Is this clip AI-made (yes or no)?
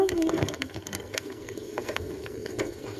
yes